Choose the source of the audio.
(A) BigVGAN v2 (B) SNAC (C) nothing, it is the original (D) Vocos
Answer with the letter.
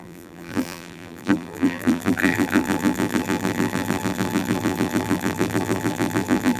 A